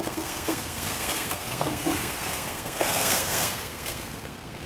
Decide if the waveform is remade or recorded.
remade